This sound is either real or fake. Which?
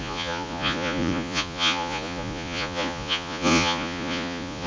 fake